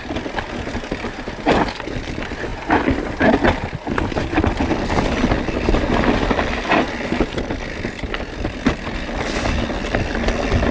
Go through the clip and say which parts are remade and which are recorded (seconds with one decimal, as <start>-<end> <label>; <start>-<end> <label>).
0.0-10.7 recorded